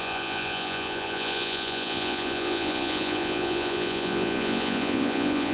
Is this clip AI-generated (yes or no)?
yes